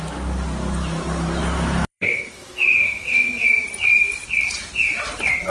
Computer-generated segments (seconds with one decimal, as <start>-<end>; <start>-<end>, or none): 1.4-3.3